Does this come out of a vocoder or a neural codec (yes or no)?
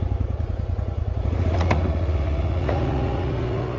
yes